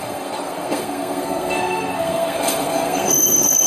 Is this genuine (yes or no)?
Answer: no